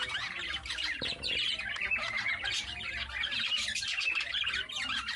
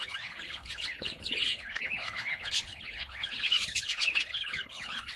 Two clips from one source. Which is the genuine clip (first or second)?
first